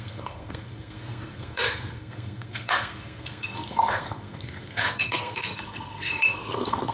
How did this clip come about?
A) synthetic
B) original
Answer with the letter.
A